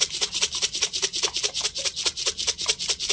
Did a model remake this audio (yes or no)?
no